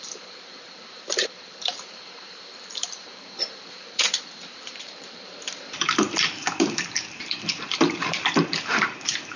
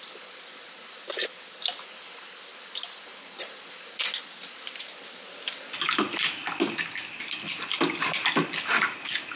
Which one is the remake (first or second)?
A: first